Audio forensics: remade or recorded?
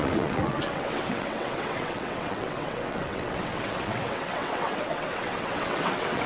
remade